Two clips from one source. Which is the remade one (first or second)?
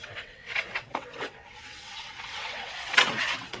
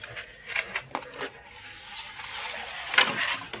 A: first